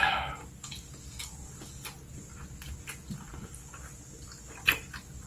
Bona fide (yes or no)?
yes